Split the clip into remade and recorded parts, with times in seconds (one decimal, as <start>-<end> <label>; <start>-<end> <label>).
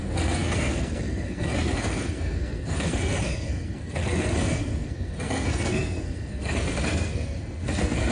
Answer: 0.0-8.1 remade